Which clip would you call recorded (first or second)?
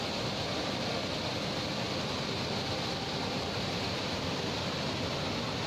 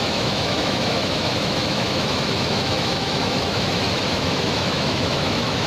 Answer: first